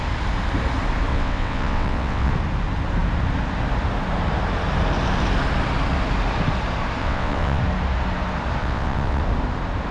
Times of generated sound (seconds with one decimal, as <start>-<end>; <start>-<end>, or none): 1.1-2.3; 7.0-7.6; 8.6-9.2